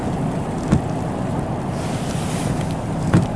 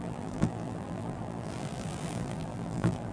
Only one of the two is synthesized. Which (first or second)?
second